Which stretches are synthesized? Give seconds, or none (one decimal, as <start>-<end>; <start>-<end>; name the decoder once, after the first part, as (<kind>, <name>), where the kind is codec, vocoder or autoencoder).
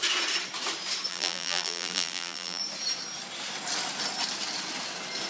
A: 1.1-2.6 (vocoder, BigVGAN v2)